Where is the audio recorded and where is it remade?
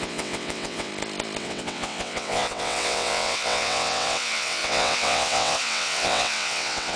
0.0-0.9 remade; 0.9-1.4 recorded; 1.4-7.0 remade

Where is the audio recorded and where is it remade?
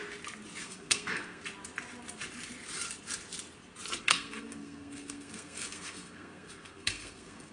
0.0-0.6 recorded; 0.6-1.4 remade; 1.4-4.0 recorded; 4.0-7.5 remade